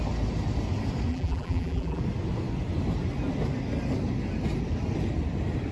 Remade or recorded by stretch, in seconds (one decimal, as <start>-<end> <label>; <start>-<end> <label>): 0.0-1.1 recorded; 1.1-2.0 remade; 2.0-5.7 recorded